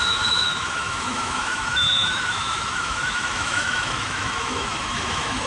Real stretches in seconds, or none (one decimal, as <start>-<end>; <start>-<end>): none